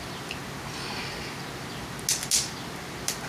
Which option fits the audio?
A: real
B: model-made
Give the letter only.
A